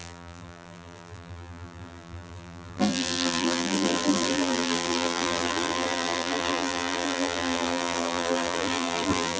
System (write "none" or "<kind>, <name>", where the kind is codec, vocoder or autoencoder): vocoder, BigVGAN v2